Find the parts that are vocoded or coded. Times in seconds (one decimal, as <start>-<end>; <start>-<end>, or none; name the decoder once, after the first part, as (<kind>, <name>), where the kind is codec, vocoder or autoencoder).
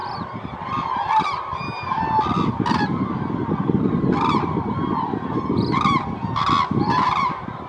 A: none